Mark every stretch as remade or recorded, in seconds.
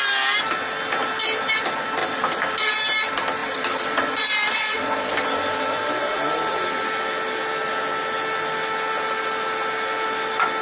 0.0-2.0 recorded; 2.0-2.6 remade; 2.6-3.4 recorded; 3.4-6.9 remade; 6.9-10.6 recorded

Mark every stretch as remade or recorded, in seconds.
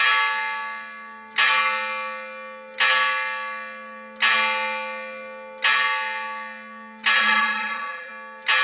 0.0-7.2 recorded; 7.2-8.1 remade; 8.1-8.6 recorded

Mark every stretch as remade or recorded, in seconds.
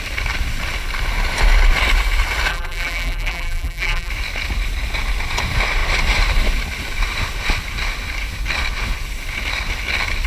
0.0-2.5 recorded; 2.5-4.1 remade; 4.1-10.3 recorded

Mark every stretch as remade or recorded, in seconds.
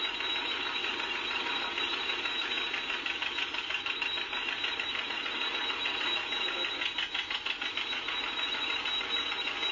0.0-0.8 recorded; 0.8-5.5 remade; 5.5-9.7 recorded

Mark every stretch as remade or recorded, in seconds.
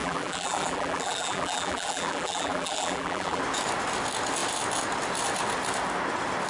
0.0-3.4 remade; 3.4-6.5 recorded